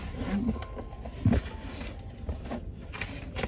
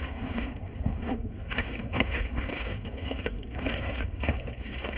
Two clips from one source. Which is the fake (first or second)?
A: second